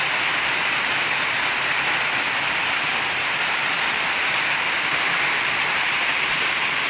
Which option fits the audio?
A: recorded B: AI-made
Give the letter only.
B